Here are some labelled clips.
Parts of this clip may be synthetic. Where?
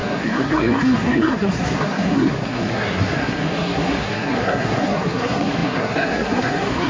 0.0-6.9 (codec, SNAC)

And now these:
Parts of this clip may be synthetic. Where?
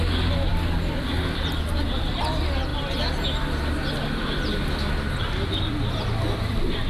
none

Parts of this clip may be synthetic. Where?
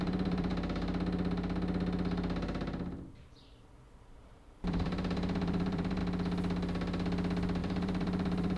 0.0-0.5 (vocoder, BigVGAN v2); 3.9-6.0; 7.6-8.6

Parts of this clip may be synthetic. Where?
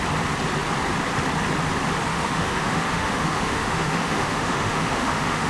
2.1-5.5 (autoencoder, DAC-VAE)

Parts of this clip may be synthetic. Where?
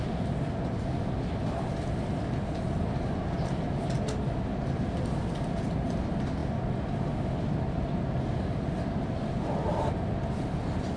none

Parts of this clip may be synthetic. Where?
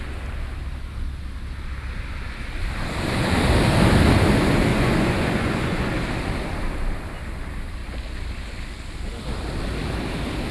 4.7-5.9 (vocoder, Vocos)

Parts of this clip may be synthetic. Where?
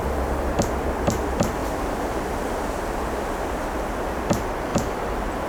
1.6-2.6 (vocoder, BigVGAN v2); 4.7-5.5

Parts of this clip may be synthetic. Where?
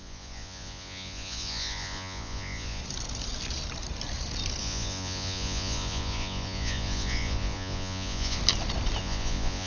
0.0-2.8 (vocoder, Vocos); 4.6-8.4; 9.0-9.7